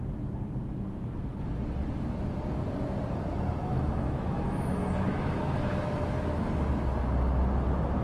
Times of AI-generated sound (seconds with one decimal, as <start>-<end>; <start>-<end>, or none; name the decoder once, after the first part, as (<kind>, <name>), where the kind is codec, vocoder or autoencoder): 3.7-6.5 (autoencoder, DAC-VAE)